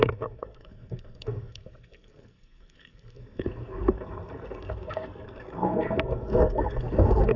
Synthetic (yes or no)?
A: yes